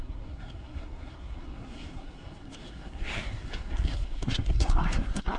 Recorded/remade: remade